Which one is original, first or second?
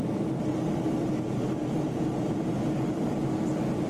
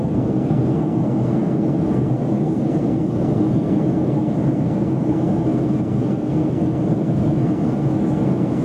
first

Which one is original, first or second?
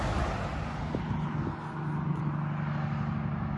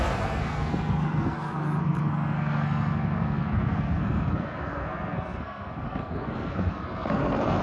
first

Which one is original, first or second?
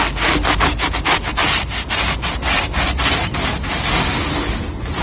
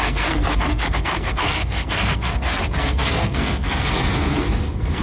first